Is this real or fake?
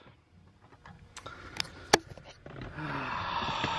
real